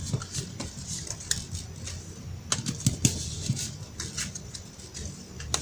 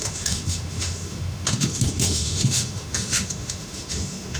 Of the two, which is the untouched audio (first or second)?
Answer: first